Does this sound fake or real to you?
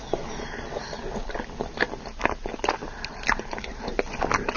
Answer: real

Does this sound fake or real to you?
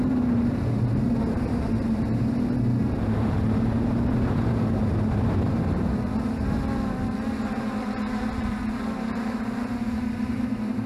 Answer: fake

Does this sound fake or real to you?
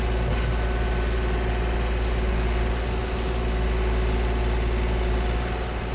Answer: real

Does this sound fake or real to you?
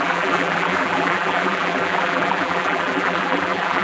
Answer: fake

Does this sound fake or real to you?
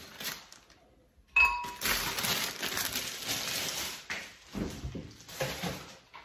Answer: real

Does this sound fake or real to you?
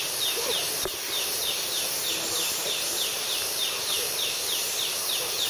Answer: fake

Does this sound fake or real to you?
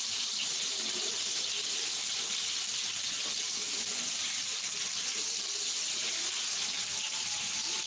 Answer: fake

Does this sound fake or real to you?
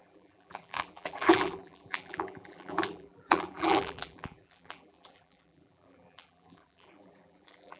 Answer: fake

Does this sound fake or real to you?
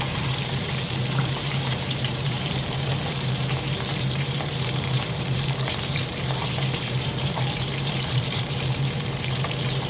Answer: fake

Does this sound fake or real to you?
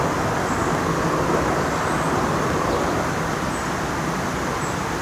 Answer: real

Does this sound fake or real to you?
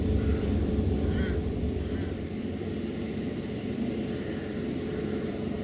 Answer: fake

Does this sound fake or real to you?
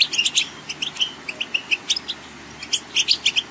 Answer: real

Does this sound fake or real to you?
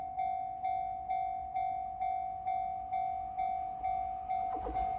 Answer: real